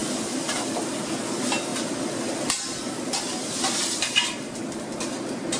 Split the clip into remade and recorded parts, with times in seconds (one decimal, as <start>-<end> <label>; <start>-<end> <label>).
0.0-0.7 remade; 0.7-1.7 recorded; 1.7-4.6 remade; 4.6-5.6 recorded